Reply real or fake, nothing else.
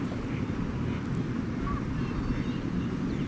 real